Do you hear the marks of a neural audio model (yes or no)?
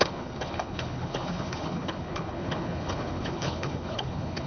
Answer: yes